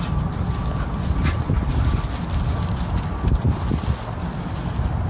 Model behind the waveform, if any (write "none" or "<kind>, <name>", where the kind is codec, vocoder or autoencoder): none